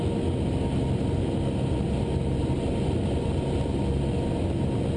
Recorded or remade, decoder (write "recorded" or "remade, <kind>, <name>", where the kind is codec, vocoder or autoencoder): recorded